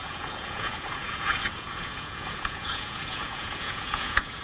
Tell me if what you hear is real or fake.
fake